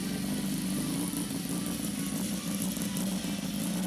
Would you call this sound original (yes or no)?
yes